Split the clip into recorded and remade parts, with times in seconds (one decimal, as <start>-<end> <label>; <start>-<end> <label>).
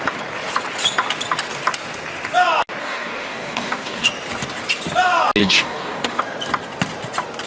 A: 0.0-2.8 recorded; 2.8-4.1 remade; 4.1-5.4 recorded; 5.4-6.2 remade; 6.2-7.5 recorded